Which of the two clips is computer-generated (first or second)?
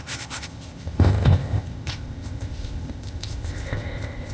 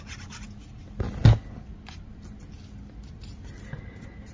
first